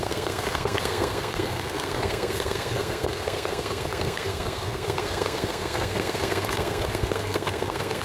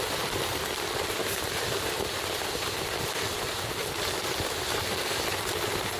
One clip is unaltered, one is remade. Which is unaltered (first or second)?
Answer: second